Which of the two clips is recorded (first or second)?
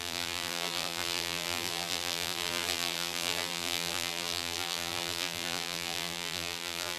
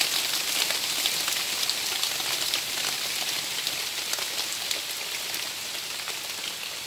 second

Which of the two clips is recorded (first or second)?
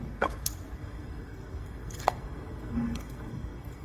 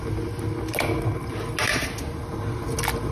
second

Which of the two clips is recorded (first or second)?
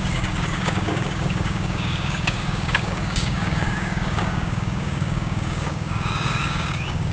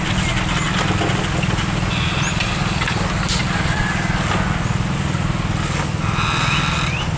second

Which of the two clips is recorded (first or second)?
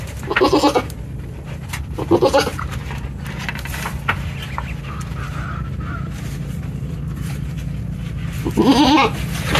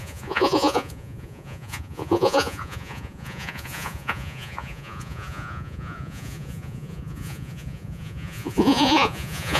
first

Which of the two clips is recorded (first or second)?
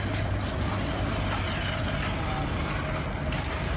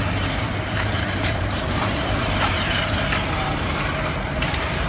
first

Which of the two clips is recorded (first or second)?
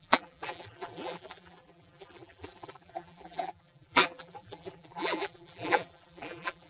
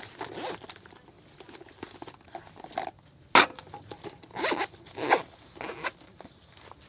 second